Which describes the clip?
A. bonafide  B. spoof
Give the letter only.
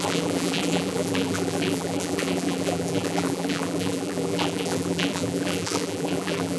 B